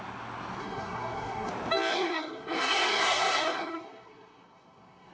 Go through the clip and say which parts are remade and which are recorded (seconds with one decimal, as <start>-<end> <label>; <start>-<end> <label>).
0.0-0.6 recorded; 0.6-1.5 remade; 1.5-1.9 recorded; 1.9-5.1 remade